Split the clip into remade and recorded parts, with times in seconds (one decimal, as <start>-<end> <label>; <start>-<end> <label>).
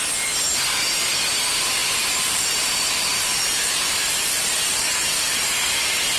0.0-6.2 recorded